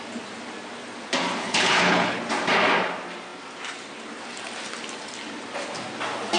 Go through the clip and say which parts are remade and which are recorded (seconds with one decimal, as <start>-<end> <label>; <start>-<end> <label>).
0.0-1.4 recorded; 1.4-2.2 remade; 2.2-6.4 recorded